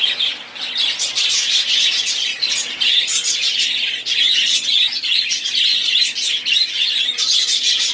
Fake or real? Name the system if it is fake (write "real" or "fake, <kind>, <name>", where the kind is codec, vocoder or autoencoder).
real